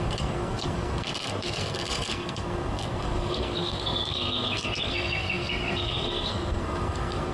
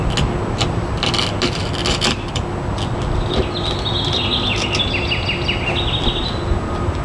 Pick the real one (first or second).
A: second